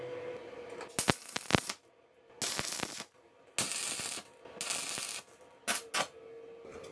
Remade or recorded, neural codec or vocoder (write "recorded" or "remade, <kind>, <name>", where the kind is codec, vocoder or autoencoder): recorded